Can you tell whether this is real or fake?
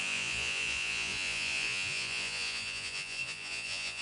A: fake